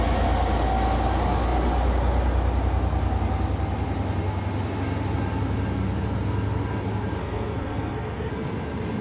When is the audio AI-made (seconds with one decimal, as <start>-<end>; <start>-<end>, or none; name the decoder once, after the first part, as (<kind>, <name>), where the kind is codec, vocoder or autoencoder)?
7.2-8.3 (codec, SNAC)

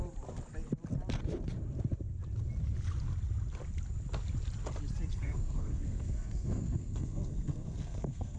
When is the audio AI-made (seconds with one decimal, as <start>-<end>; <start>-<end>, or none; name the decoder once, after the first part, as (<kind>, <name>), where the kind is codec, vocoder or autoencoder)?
5.1-8.4 (codec, SNAC)

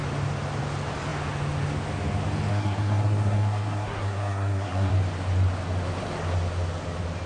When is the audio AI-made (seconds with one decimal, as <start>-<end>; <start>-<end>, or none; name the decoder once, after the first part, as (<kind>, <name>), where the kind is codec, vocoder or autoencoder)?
2.5-4.9 (codec, SNAC)